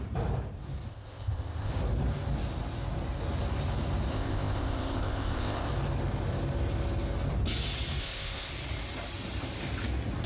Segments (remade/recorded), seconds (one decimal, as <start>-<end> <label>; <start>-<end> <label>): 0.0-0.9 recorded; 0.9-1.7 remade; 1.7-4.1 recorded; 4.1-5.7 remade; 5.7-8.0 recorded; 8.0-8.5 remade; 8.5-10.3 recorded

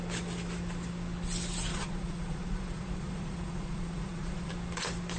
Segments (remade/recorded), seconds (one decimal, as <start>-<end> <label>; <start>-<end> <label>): 0.0-1.7 recorded; 1.7-4.5 remade; 4.5-5.2 recorded

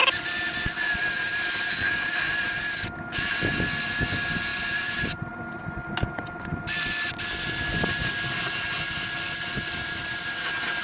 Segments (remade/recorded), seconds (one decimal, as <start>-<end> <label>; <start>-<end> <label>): 0.0-4.5 recorded; 4.5-5.6 remade; 5.6-10.8 recorded

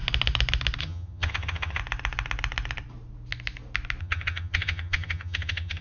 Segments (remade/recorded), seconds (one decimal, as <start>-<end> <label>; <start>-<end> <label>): 0.0-0.8 recorded; 0.8-1.8 remade; 1.8-4.0 recorded; 4.0-5.8 remade

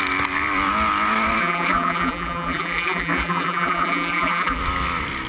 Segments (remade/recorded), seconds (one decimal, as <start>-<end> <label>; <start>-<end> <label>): 0.0-1.4 recorded; 1.4-4.6 remade; 4.6-5.3 recorded

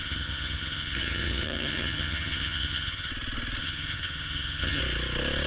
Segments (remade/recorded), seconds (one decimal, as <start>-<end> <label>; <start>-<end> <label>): 0.0-3.1 remade; 3.1-3.6 recorded; 3.6-4.8 remade; 4.8-5.5 recorded

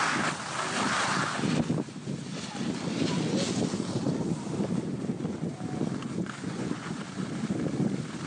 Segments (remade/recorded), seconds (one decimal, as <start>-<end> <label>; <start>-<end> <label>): 0.0-6.0 recorded; 6.0-7.0 remade; 7.0-8.3 recorded